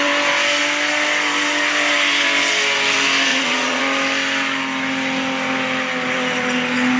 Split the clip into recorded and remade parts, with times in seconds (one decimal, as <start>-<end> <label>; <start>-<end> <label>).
0.0-3.3 recorded; 3.3-3.8 remade; 3.8-7.0 recorded